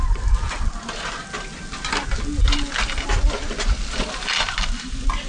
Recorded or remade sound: recorded